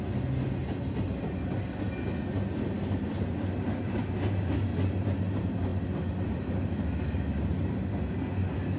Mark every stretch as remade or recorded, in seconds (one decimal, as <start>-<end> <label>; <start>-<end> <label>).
0.0-8.8 recorded